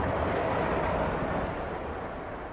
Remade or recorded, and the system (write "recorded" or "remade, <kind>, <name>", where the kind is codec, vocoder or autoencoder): recorded